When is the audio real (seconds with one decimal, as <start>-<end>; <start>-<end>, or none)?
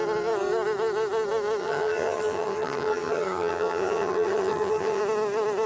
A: 0.0-1.6; 5.0-5.7